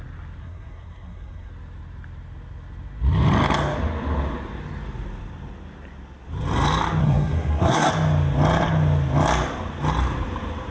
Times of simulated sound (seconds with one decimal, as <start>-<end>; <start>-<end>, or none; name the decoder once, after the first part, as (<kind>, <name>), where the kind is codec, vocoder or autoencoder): 0.4-1.5 (codec, SNAC); 7.0-7.9